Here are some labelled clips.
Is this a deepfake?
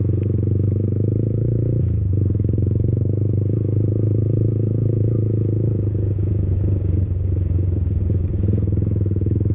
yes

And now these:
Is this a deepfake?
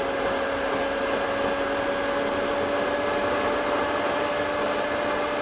no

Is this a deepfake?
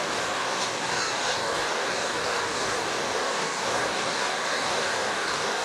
yes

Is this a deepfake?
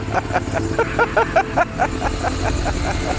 no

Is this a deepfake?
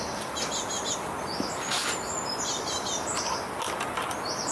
no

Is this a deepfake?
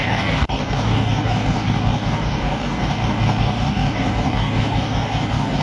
yes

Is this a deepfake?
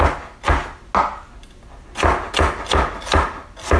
no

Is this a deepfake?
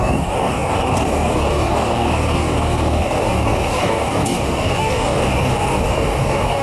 yes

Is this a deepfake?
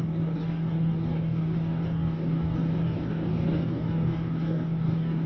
yes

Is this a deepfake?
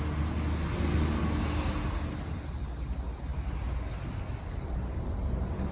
no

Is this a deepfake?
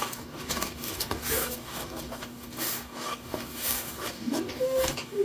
yes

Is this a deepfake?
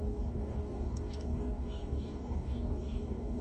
yes